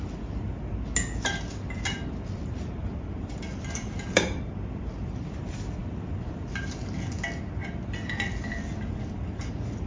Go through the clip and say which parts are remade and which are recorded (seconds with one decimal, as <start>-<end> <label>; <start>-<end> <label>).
0.0-3.3 recorded; 3.3-5.2 remade; 5.2-9.9 recorded

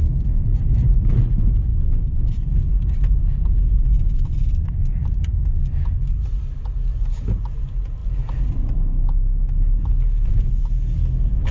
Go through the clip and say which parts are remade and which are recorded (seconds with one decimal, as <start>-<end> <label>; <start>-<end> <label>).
0.0-11.5 recorded

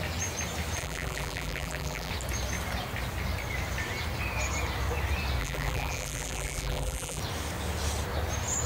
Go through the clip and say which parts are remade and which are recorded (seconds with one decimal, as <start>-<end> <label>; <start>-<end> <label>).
0.0-0.8 recorded; 0.8-2.1 remade; 2.1-5.4 recorded; 5.4-7.2 remade; 7.2-8.7 recorded

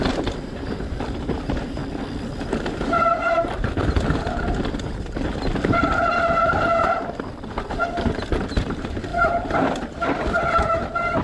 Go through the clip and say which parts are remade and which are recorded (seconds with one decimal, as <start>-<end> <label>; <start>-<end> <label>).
0.0-1.8 remade; 1.8-2.4 recorded; 2.4-11.2 remade